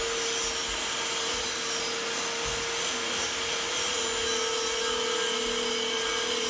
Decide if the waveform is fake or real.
real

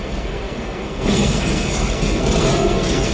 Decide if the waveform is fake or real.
fake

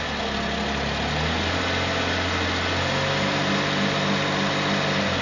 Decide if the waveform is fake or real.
real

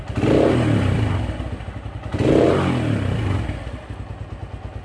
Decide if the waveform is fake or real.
real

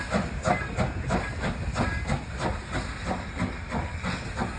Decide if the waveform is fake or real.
real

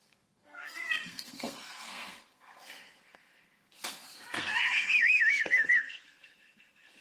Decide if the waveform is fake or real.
fake